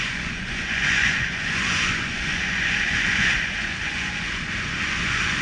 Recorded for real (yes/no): no